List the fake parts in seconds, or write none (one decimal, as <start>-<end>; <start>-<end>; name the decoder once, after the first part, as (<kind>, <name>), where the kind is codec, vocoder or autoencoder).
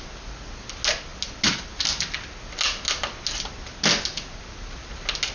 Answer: none